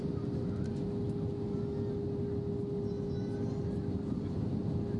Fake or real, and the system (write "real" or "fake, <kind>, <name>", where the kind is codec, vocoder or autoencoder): real